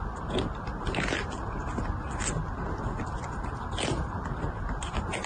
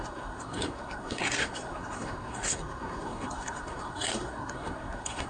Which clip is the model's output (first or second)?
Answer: second